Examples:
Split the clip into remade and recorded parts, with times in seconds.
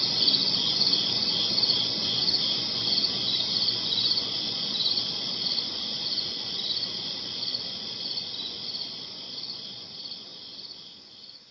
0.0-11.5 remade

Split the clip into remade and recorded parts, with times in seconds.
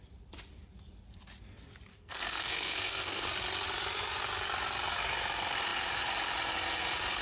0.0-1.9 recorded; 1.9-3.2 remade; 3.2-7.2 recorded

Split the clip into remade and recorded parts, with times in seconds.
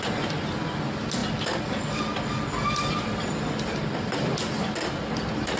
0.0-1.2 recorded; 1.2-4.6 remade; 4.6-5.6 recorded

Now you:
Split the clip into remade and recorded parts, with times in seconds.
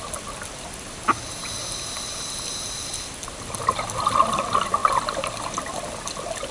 0.0-6.5 recorded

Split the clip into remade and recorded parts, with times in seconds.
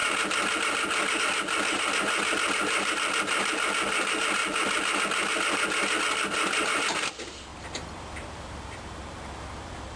0.0-7.5 recorded; 7.5-9.6 remade; 9.6-10.0 recorded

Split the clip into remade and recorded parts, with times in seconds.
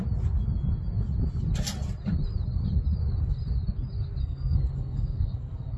0.0-4.2 recorded; 4.2-5.8 remade